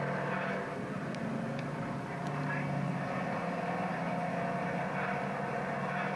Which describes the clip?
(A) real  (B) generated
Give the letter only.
A